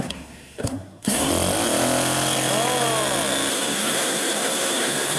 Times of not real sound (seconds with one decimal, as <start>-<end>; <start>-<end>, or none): 0.0-1.3; 3.5-5.2